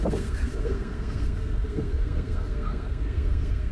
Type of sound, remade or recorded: remade